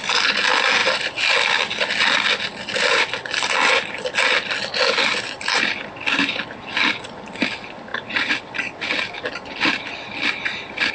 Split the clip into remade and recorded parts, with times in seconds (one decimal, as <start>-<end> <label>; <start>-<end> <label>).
0.0-10.9 recorded